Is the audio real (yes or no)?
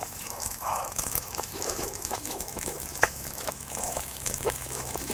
no